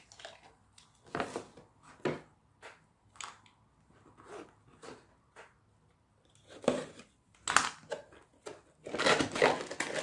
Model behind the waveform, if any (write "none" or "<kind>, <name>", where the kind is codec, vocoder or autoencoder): none